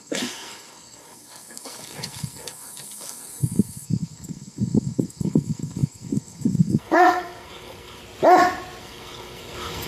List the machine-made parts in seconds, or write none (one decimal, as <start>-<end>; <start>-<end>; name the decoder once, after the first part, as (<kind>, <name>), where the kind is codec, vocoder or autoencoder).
0.0-8.0 (codec, SNAC); 8.8-9.9